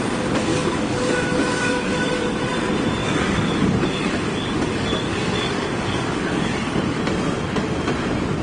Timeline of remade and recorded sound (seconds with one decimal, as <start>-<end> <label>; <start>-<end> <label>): 0.0-0.5 recorded; 0.5-2.5 remade; 2.5-3.0 recorded; 3.0-7.0 remade; 7.0-8.4 recorded